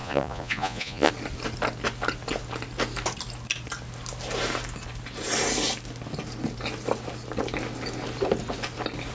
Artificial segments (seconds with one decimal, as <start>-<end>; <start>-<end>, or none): 0.0-1.1